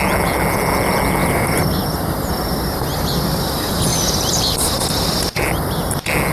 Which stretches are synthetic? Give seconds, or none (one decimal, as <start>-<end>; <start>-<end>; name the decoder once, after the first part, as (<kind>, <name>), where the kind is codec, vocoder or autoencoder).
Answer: 1.2-2.3 (vocoder, BigVGAN v2); 3.9-5.4